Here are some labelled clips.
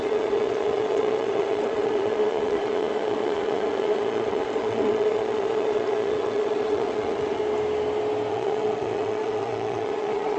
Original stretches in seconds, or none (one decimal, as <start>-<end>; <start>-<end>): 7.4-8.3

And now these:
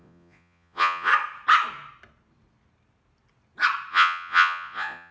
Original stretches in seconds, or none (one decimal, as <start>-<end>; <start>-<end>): 1.1-3.9

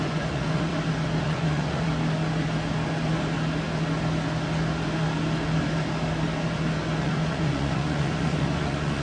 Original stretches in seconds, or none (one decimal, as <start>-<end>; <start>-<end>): 0.7-1.2; 1.9-7.0

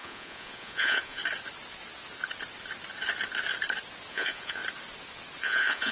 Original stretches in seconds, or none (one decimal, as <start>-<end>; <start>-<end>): 1.2-4.1; 4.6-5.4

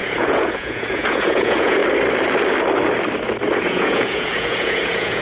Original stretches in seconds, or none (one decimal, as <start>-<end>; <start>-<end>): 1.8-3.6

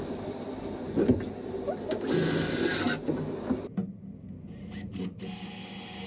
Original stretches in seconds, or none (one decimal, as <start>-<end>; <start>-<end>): 0.0-6.1